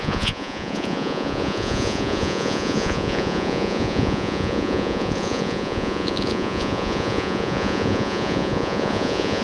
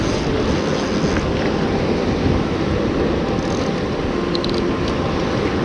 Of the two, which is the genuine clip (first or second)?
second